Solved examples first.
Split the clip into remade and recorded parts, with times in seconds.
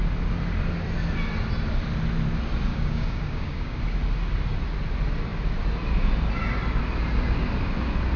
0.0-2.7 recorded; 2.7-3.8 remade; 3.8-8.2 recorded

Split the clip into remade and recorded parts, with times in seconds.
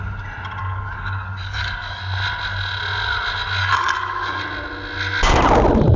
0.0-0.6 recorded; 0.6-2.0 remade; 2.0-3.6 recorded; 3.6-4.4 remade; 4.4-6.0 recorded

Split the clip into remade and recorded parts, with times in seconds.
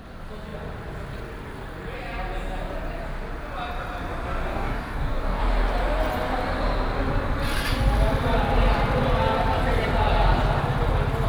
0.0-4.5 recorded; 4.5-5.4 remade; 5.4-11.3 recorded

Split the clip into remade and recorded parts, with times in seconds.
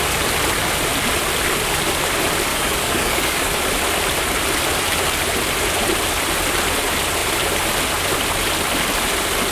0.0-2.5 recorded; 2.5-3.6 remade; 3.6-9.5 recorded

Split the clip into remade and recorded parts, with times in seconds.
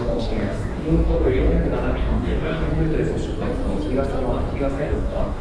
0.0-1.5 remade; 1.5-2.0 recorded; 2.0-2.7 remade; 2.7-4.7 recorded; 4.7-5.4 remade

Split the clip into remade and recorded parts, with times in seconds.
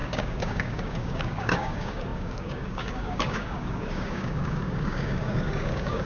0.0-6.1 remade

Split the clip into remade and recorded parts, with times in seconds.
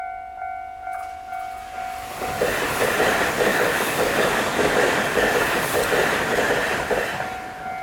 0.0-3.5 recorded; 3.5-5.8 remade; 5.8-7.8 recorded